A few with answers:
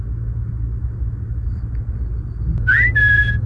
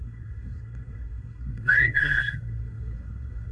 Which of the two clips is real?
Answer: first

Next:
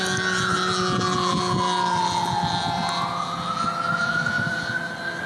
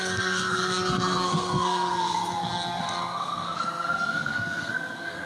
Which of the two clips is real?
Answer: first